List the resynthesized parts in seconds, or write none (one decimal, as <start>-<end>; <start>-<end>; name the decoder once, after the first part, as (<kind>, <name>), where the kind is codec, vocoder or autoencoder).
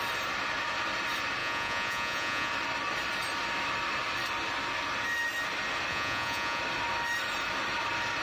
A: 1.4-2.5 (vocoder, Vocos); 5.9-6.6